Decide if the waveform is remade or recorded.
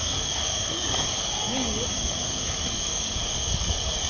remade